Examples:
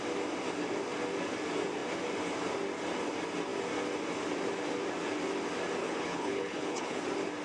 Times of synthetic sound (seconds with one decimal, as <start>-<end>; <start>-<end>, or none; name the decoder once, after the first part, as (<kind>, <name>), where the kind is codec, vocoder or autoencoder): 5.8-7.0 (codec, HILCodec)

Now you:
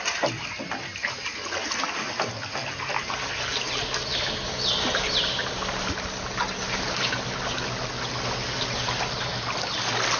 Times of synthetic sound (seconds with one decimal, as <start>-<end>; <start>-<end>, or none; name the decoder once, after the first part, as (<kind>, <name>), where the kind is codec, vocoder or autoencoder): none

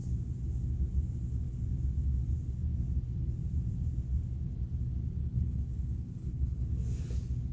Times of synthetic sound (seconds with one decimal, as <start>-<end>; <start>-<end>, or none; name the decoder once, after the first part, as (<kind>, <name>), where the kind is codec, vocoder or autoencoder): 5.2-6.7 (codec, HILCodec)